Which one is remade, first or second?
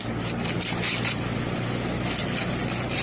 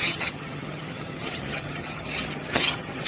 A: second